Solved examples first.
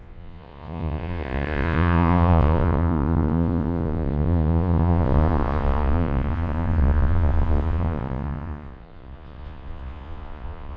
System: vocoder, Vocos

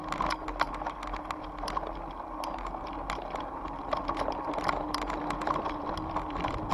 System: none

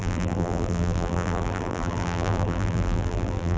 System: vocoder, BigVGAN v2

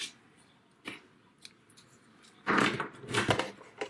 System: none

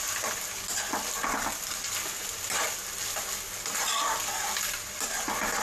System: none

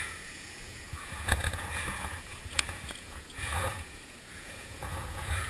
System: vocoder, Vocos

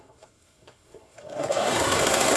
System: codec, SNAC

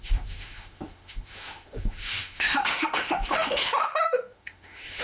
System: autoencoder, DAC-VAE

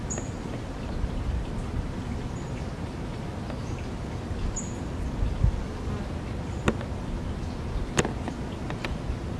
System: none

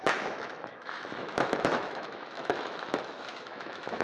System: autoencoder, DAC-VAE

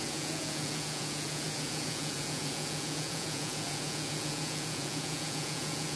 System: vocoder, Vocos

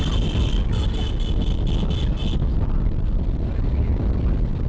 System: none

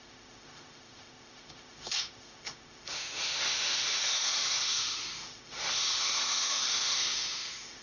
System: autoencoder, DAC-VAE